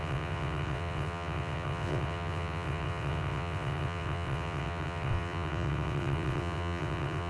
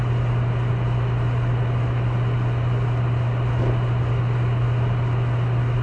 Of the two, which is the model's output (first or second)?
first